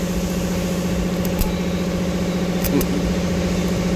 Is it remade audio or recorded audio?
recorded